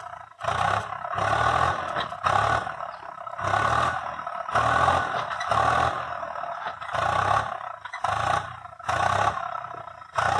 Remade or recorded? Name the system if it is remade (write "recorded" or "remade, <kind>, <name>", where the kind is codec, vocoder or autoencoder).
recorded